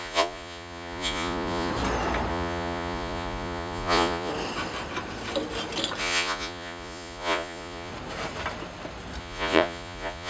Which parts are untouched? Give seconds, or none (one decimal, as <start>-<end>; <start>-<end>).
1.7-2.3; 4.3-6.0; 7.9-9.2